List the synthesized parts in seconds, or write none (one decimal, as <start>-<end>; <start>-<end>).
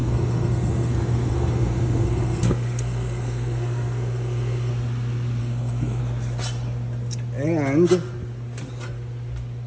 0.0-4.7; 5.4-6.0